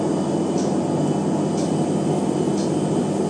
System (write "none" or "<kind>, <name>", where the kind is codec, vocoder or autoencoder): none